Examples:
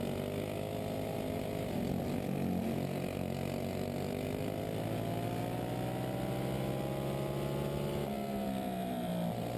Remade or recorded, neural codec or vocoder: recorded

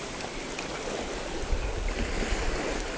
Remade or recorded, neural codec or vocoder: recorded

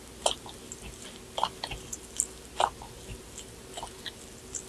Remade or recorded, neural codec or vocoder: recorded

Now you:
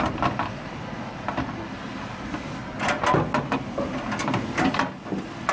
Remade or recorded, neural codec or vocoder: recorded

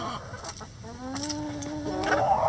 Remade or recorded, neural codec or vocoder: recorded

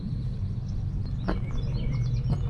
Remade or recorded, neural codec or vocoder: recorded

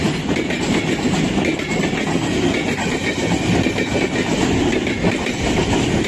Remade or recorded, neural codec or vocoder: recorded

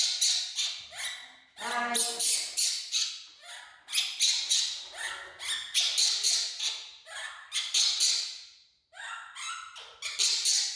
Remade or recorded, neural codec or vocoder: recorded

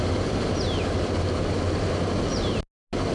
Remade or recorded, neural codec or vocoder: recorded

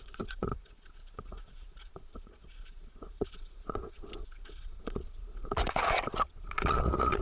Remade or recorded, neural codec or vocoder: remade, vocoder, Vocos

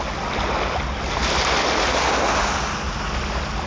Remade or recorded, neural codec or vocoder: recorded